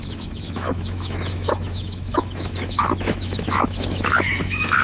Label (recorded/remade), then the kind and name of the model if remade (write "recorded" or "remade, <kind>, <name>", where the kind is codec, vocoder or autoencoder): remade, autoencoder, DAC-VAE